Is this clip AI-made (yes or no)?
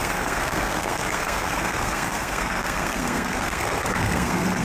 yes